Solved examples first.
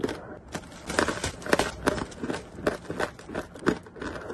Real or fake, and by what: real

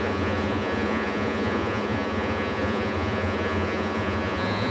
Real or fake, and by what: fake, vocoder, Vocos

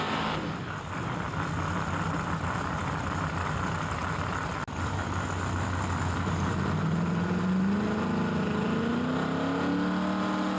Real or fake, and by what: real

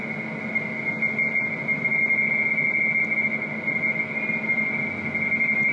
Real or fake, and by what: real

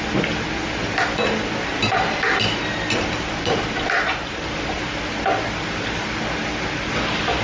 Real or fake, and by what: real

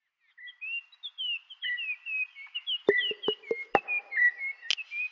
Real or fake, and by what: real